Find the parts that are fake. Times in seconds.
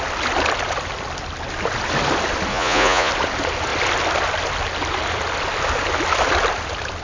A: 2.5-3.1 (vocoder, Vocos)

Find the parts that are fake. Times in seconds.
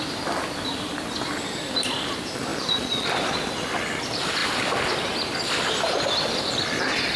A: none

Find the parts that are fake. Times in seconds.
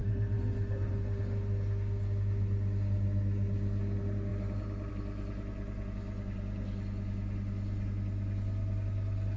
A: none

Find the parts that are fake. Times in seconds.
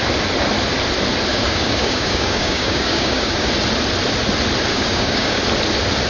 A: 1.3-3.5 (codec, DAC); 4.7-5.4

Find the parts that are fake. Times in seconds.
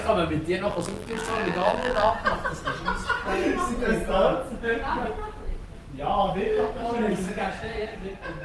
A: 0.7-2.1 (vocoder, BigVGAN v2)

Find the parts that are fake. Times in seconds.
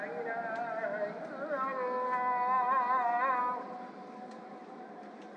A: 4.6-5.4 (vocoder, BigVGAN v2)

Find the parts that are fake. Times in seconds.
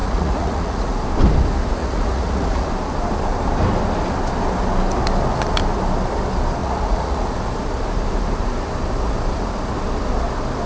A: 0.0-1.0 (vocoder, Vocos); 1.8-2.7; 6.6-7.4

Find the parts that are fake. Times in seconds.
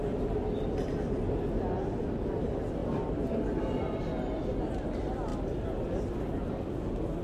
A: none